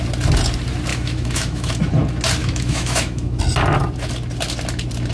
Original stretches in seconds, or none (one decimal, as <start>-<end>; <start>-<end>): 0.0-0.9; 1.7-2.4; 3.4-5.1